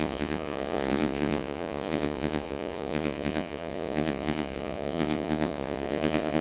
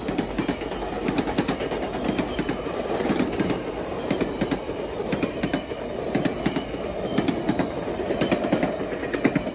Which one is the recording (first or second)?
second